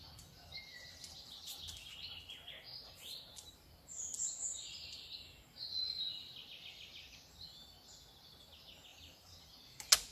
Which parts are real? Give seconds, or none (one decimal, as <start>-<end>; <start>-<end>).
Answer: 0.0-2.7; 3.7-8.9; 9.6-10.1